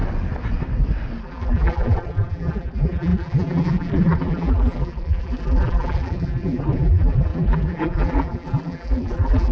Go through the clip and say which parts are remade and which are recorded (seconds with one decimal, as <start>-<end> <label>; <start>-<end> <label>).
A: 0.0-1.2 recorded; 1.2-9.5 remade